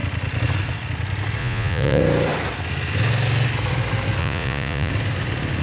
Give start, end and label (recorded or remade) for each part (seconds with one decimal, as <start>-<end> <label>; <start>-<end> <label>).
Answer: 0.0-1.4 recorded; 1.4-2.0 remade; 2.0-4.2 recorded; 4.2-4.9 remade; 4.9-5.6 recorded